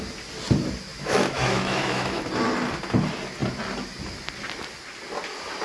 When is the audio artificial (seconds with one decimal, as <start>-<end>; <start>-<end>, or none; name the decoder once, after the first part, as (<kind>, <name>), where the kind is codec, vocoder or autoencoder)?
0.9-2.2 (autoencoder, DAC-VAE)